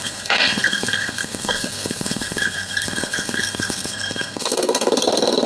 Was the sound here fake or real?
fake